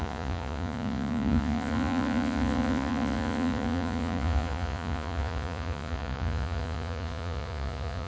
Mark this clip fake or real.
fake